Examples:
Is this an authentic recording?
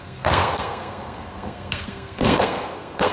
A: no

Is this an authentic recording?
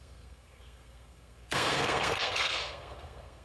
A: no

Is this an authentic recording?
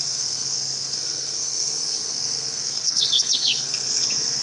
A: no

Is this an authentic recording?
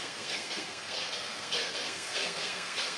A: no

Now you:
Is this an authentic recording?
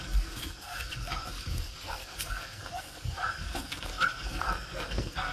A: no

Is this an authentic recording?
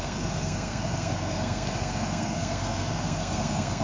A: no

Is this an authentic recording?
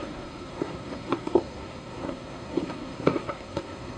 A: no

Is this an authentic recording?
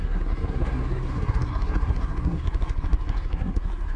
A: no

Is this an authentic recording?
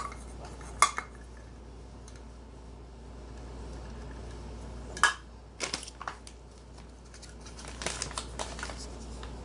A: yes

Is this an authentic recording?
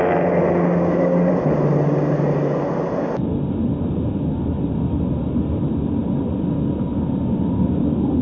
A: yes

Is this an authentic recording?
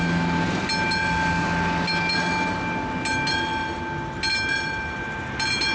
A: yes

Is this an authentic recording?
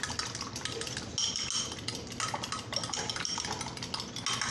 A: yes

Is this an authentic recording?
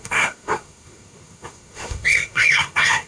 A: no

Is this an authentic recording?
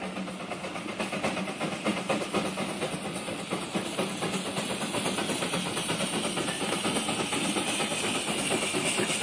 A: yes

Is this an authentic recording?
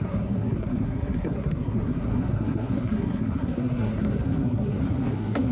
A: no